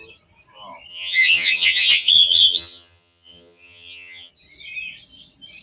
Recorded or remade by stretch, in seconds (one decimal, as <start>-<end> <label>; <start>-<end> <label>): 0.0-0.9 recorded; 0.9-4.3 remade; 4.3-5.6 recorded